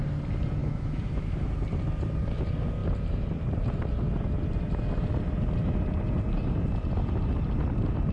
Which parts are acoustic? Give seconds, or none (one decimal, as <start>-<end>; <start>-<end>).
0.0-0.6; 1.5-8.1